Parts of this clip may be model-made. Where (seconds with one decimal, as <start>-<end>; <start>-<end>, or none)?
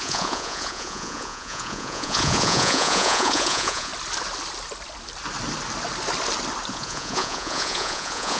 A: 0.0-3.9; 6.7-8.4